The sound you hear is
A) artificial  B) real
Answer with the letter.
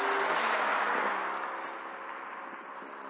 B